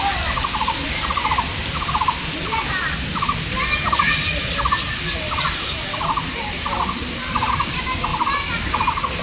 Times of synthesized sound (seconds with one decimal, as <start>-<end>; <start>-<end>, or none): none